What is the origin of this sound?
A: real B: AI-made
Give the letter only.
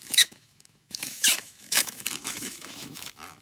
B